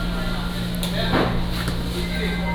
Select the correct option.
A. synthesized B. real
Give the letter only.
B